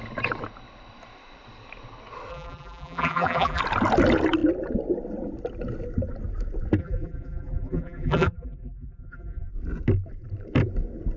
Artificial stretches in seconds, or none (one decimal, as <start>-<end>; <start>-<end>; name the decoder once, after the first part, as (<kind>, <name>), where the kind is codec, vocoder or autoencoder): 2.3-3.6 (vocoder, BigVGAN v2); 6.8-9.5